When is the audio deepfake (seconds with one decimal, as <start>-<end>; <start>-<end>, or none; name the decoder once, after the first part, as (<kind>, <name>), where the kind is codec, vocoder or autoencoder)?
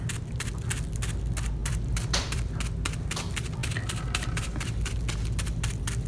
1.6-2.5 (vocoder, BigVGAN v2); 3.6-4.9